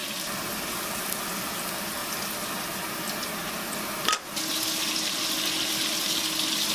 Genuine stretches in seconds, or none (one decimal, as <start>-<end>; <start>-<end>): 0.0-6.7